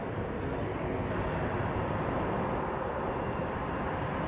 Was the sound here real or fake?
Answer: real